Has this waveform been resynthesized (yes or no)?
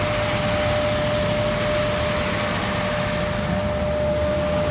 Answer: no